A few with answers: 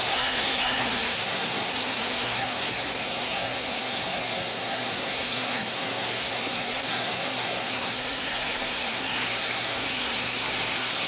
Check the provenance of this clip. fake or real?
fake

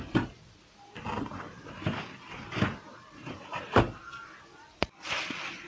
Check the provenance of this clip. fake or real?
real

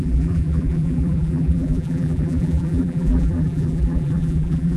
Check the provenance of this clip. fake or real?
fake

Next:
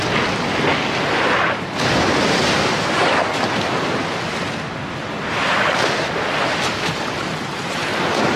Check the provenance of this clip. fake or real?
real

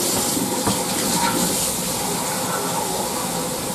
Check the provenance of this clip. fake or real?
real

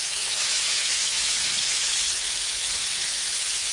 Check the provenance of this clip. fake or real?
fake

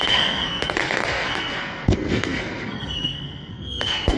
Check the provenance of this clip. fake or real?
fake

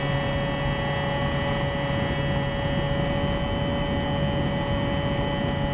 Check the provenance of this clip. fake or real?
real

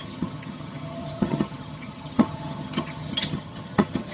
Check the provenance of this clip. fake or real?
fake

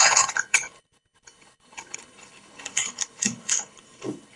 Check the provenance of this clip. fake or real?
fake